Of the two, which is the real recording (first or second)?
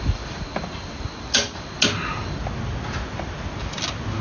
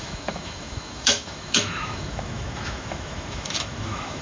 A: first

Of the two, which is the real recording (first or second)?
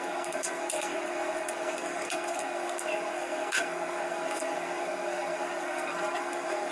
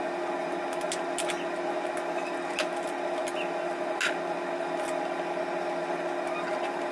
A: second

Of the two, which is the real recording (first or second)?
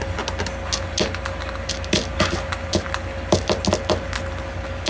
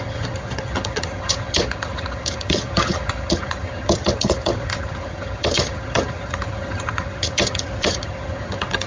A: first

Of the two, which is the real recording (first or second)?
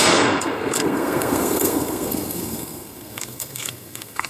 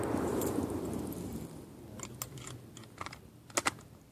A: second